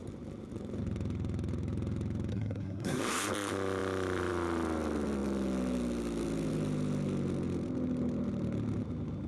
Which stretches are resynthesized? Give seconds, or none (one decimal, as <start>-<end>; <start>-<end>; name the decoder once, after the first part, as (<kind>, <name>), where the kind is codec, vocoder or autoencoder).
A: 2.3-3.0 (codec, SNAC)